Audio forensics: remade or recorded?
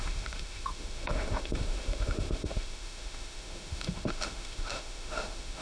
remade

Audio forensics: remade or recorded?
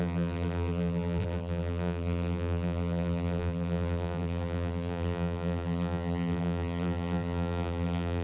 remade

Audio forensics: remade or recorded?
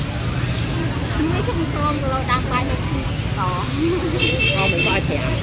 recorded